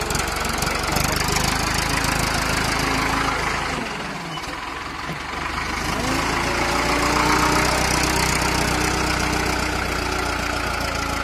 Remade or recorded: recorded